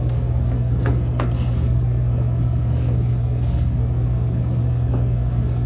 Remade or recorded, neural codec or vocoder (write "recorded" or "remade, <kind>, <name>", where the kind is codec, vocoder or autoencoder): remade, codec, SNAC